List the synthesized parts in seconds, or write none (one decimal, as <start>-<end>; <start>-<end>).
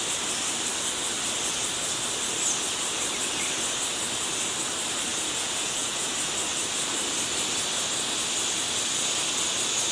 5.1-6.1